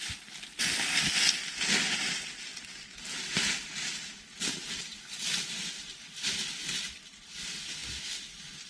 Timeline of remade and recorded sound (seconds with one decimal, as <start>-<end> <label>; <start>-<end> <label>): 0.0-8.7 recorded